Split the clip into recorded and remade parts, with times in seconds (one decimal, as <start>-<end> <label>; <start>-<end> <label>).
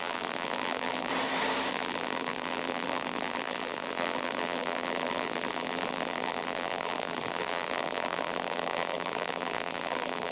0.0-1.1 remade; 1.1-1.7 recorded; 1.7-10.3 remade